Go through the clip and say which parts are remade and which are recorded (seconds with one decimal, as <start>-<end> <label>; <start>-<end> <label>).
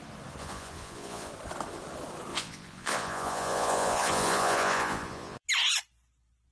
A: 0.0-0.4 recorded; 0.4-1.3 remade; 1.3-2.3 recorded; 2.3-5.5 remade; 5.5-6.5 recorded